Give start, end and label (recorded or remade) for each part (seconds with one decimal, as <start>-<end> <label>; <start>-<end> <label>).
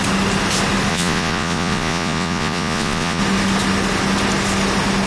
0.0-0.9 recorded; 0.9-3.2 remade; 3.2-5.1 recorded